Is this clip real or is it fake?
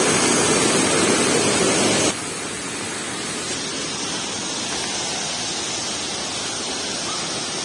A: real